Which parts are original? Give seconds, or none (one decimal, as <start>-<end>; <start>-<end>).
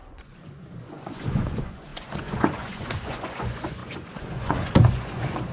none